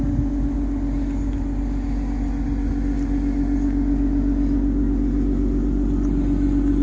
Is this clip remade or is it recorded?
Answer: recorded